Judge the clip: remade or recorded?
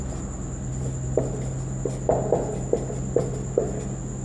recorded